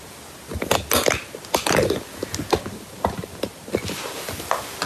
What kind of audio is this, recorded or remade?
recorded